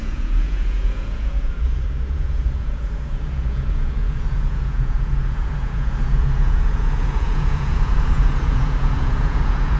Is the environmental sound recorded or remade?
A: remade